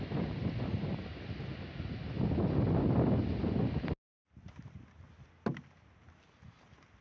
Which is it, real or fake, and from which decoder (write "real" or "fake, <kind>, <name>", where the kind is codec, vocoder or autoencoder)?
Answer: real